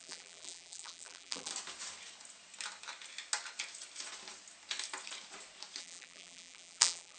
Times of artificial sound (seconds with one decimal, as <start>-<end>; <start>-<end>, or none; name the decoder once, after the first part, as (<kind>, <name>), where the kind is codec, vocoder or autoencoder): 0.0-1.5 (vocoder, BigVGAN v2); 5.8-7.2